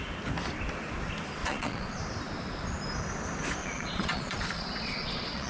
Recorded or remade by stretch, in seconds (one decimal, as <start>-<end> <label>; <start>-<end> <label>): 0.0-1.4 recorded; 1.4-2.0 remade; 2.0-3.6 recorded; 3.6-5.5 remade